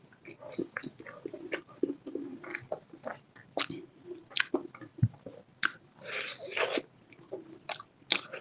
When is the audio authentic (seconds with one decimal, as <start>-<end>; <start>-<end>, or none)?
0.0-8.4